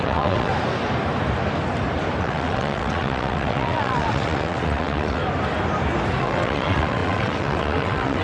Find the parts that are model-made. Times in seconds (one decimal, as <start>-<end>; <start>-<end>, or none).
0.0-0.5; 2.2-5.2; 6.2-8.2